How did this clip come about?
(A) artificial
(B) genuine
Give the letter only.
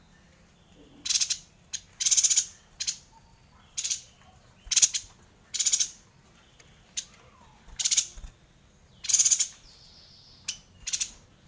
B